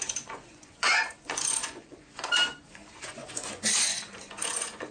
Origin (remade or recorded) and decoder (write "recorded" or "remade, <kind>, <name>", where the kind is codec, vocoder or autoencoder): remade, vocoder, Vocos